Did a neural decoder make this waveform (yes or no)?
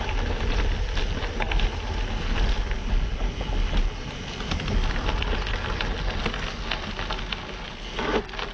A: no